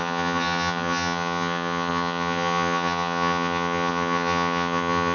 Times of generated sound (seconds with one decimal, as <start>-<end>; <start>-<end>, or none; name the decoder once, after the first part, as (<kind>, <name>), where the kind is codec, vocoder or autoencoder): 0.0-5.1 (vocoder, HiFi-GAN)